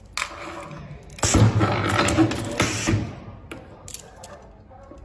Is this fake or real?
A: real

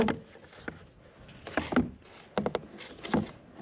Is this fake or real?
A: real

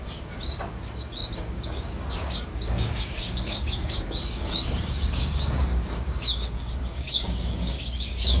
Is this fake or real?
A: fake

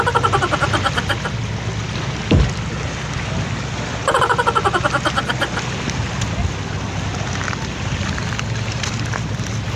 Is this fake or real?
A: real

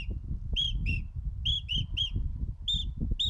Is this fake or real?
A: real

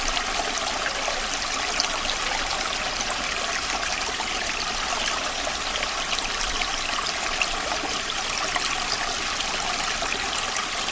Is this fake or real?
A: real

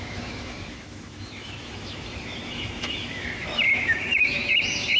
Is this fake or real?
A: fake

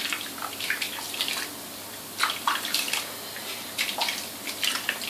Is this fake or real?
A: real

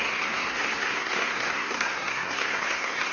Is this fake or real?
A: fake